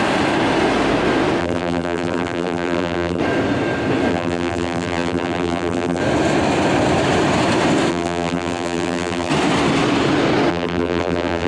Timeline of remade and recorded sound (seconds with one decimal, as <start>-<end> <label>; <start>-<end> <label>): 0.0-1.4 recorded; 1.4-3.2 remade; 3.2-4.1 recorded; 4.1-6.0 remade; 6.0-7.9 recorded; 7.9-9.3 remade; 9.3-10.5 recorded; 10.5-11.5 remade